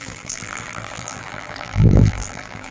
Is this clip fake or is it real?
fake